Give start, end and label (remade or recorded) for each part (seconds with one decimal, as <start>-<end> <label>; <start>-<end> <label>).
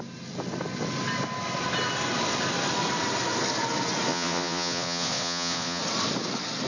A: 0.0-4.1 recorded; 4.1-5.8 remade; 5.8-6.7 recorded